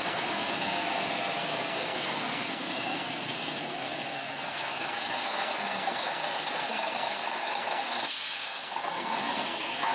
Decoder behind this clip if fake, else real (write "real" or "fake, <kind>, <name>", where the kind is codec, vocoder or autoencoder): fake, codec, SNAC